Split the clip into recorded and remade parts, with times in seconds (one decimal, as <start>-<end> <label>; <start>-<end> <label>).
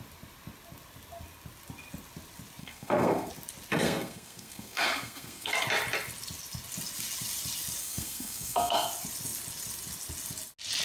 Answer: 0.0-2.6 recorded; 2.6-3.3 remade; 3.3-3.7 recorded; 3.7-5.5 remade; 5.5-7.8 recorded; 7.8-8.9 remade; 8.9-10.8 recorded